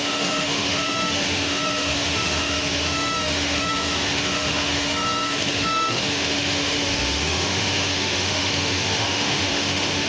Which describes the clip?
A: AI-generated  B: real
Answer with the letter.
A